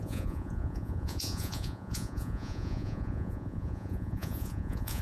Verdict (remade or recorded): remade